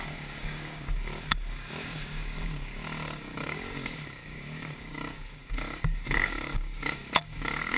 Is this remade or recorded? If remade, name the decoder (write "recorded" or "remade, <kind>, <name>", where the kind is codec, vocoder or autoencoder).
remade, codec, DAC